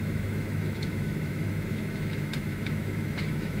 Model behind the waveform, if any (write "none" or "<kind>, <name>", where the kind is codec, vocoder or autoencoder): autoencoder, DAC-VAE